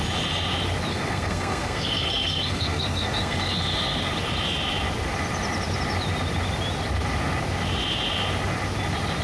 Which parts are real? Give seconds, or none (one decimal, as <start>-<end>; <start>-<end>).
0.0-0.9; 3.5-9.2